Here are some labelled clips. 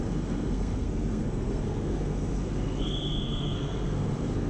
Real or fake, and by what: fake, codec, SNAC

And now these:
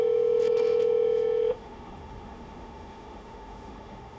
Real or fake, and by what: fake, autoencoder, DAC-VAE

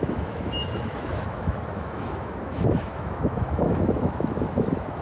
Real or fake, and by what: fake, autoencoder, DAC-VAE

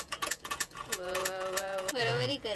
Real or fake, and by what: fake, vocoder, Vocos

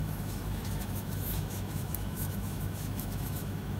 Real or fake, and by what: fake, autoencoder, DAC-VAE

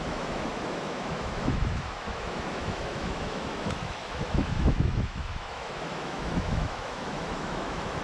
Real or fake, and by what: fake, autoencoder, DAC-VAE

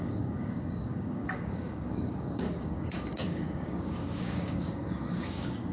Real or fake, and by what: fake, codec, DAC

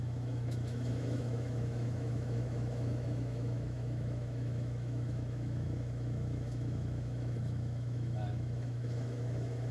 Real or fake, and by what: fake, autoencoder, DAC-VAE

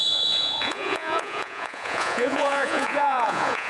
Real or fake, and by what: fake, vocoder, Vocos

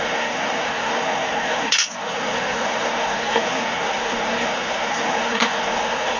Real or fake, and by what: fake, codec, SNAC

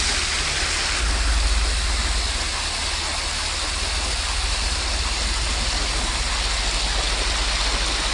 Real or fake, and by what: real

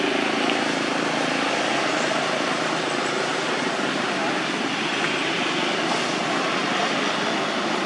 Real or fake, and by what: real